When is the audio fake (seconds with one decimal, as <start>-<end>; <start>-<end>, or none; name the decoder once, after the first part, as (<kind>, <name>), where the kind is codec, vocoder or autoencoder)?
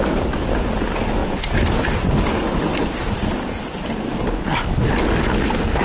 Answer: none